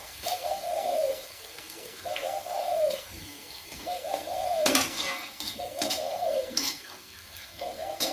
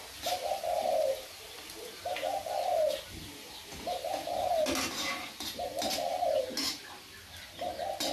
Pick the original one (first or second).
second